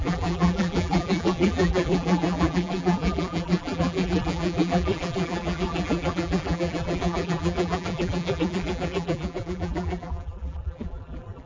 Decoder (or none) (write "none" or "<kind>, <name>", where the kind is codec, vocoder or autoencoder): vocoder, BigVGAN v2